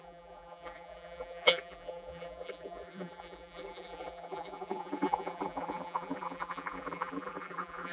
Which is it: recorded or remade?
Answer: remade